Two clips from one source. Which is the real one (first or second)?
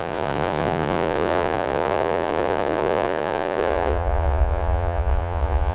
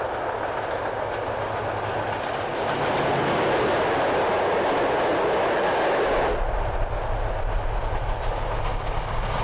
second